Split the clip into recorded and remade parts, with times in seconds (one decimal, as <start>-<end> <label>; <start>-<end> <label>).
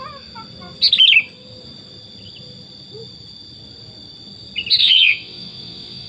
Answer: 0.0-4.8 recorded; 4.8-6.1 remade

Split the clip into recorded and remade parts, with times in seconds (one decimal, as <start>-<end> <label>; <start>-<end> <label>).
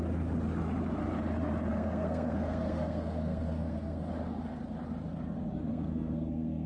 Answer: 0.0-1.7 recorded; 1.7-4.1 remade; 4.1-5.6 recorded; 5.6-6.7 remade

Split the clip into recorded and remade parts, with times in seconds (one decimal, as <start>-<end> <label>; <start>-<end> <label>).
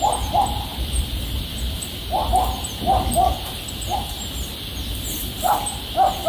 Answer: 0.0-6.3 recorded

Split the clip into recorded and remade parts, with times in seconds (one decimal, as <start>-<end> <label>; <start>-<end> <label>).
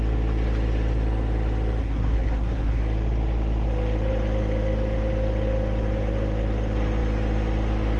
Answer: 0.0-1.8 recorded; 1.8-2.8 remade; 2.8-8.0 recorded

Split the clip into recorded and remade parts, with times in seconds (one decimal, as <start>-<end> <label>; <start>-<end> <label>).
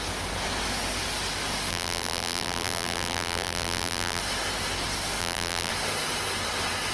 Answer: 0.0-1.7 recorded; 1.7-4.2 remade; 4.2-5.2 recorded; 5.2-5.7 remade; 5.7-6.9 recorded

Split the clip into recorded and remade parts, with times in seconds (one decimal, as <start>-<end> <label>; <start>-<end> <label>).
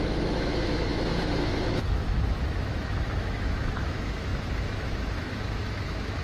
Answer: 0.0-6.2 remade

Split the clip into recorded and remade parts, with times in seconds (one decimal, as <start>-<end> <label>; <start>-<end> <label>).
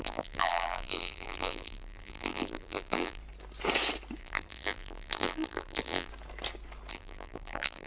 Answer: 0.0-3.2 remade; 3.2-4.2 recorded; 4.2-6.1 remade; 6.1-6.9 recorded; 6.9-7.9 remade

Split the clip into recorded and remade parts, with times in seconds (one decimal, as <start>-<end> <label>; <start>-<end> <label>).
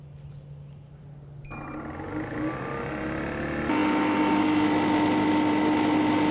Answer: 0.0-6.3 recorded